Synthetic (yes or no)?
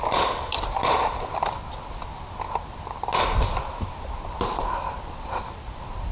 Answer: no